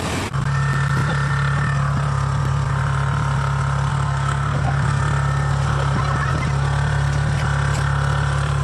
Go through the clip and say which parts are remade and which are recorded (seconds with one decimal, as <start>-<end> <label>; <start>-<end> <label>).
0.0-3.9 recorded; 3.9-5.0 remade; 5.0-8.6 recorded